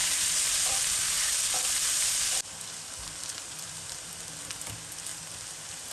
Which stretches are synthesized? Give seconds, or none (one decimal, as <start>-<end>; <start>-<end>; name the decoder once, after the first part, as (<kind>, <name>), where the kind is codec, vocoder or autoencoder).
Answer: 0.0-1.4 (vocoder, BigVGAN v2); 2.0-4.1; 5.1-5.9